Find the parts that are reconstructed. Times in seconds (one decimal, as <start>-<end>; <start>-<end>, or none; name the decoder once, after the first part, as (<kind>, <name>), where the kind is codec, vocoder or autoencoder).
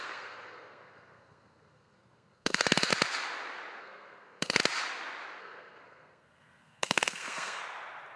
0.0-2.9 (codec, SNAC); 3.8-4.6; 5.4-7.6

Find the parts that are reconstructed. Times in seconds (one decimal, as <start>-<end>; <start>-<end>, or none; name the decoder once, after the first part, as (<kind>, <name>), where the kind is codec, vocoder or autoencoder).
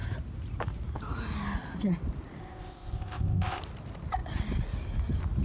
2.4-3.6 (codec, ZipCodec)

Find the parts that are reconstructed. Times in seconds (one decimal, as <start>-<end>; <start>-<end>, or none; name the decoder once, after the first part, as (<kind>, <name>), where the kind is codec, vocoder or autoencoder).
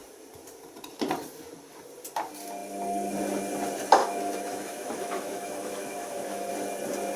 4.0-6.5 (autoencoder, DAC-VAE)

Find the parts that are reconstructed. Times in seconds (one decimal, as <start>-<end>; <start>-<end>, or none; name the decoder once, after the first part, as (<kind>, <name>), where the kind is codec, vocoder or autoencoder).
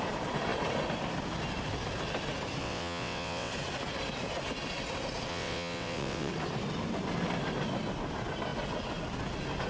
2.6-3.5 (vocoder, WaveNeXt); 5.3-6.3